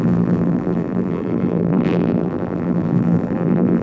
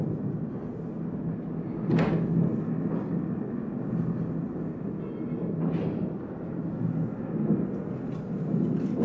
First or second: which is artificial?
first